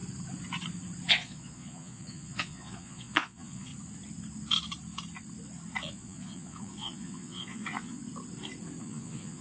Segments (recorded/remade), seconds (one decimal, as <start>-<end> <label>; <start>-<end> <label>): 0.0-1.1 recorded; 1.1-3.7 remade; 3.7-5.8 recorded; 5.8-8.0 remade; 8.0-8.8 recorded; 8.8-9.4 remade